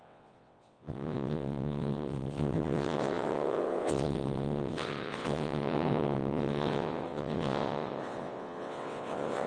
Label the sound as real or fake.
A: fake